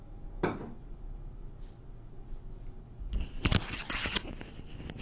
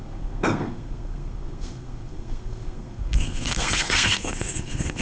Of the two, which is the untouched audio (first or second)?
first